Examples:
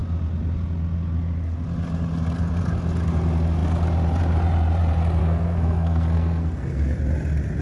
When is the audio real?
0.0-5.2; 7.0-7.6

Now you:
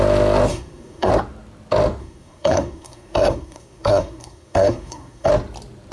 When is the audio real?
0.0-0.5; 1.1-2.0; 5.3-5.9

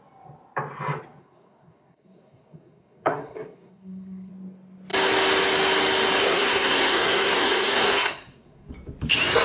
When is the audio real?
0.0-1.2; 4.3-6.2; 8.7-9.4

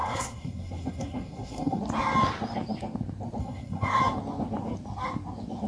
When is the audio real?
1.8-3.4; 4.0-5.7